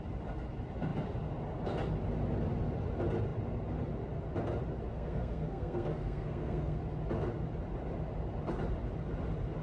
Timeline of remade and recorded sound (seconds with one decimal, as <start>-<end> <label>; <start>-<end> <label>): 0.0-4.9 recorded; 4.9-6.8 remade; 6.8-9.6 recorded